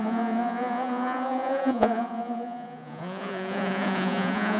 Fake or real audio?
fake